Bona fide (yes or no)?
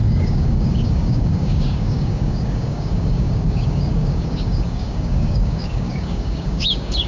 no